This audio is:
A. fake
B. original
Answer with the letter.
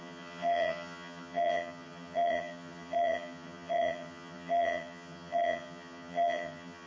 A